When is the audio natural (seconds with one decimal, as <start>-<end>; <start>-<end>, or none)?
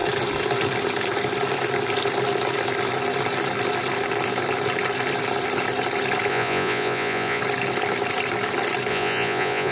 0.0-6.3; 7.4-8.9